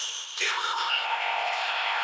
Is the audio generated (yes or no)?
yes